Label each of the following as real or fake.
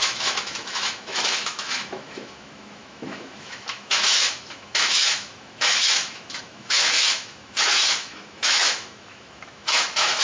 fake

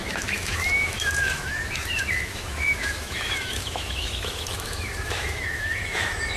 fake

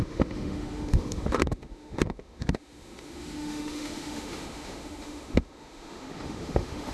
fake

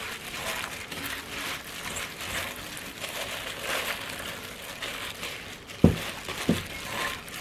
real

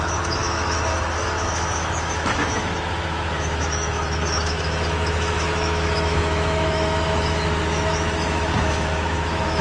fake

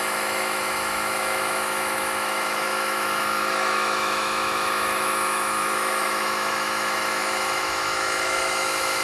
fake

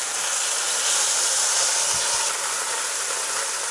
real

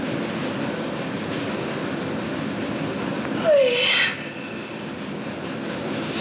real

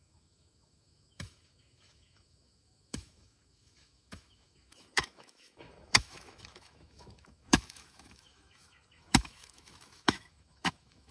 fake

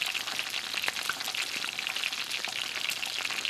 real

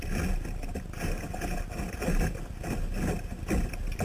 real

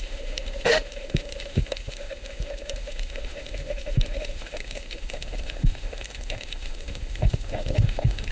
fake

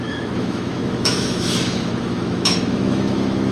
fake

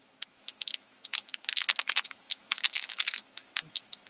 fake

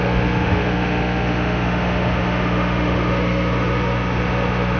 fake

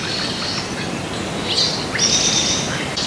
real